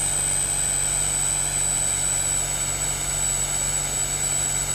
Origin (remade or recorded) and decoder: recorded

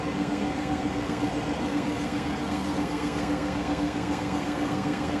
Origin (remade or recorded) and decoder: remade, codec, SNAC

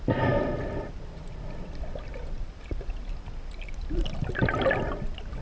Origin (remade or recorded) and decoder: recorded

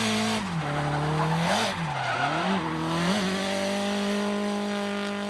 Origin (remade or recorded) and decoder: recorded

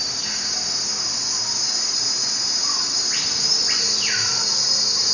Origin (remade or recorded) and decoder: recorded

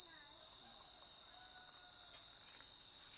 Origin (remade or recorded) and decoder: recorded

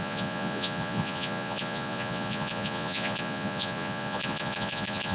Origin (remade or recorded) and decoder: remade, vocoder, Vocos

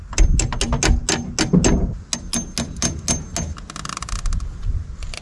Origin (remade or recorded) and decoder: recorded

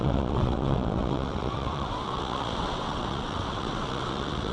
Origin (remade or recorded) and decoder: remade, vocoder, WaveNeXt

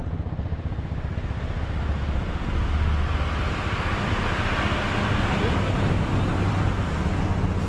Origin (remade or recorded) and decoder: recorded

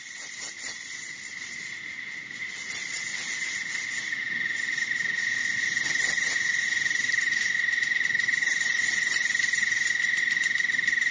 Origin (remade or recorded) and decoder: recorded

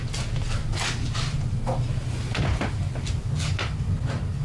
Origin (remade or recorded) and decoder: recorded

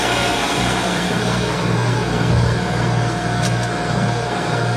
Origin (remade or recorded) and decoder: remade, codec, SNAC